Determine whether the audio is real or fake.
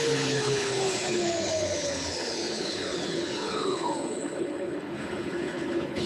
fake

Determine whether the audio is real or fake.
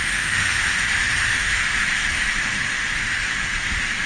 fake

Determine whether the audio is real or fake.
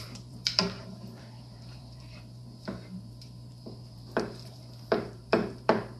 fake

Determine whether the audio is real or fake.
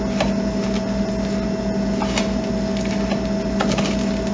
real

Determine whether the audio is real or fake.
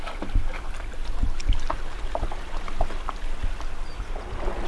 real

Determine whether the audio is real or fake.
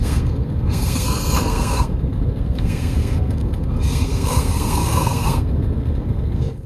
fake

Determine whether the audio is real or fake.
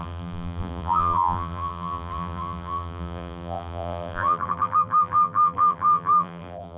fake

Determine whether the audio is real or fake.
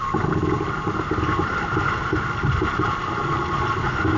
real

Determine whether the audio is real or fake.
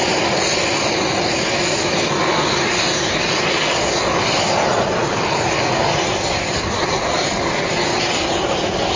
real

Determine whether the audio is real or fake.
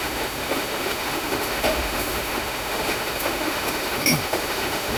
fake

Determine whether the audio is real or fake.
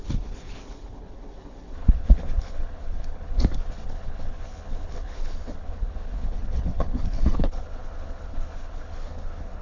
fake